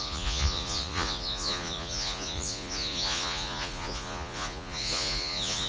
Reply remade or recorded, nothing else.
remade